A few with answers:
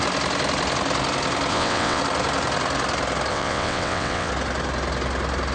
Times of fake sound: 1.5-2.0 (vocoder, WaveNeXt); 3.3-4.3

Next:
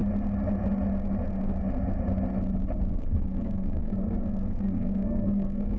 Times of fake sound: 3.0-5.8 (codec, SNAC)

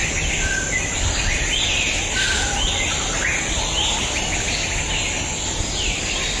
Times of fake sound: none

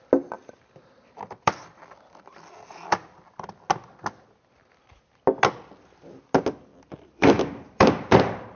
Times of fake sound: 0.4-3.0 (vocoder, BigVGAN v2); 6.7-8.6